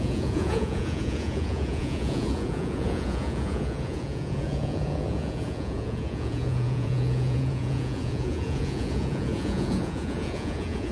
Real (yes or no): no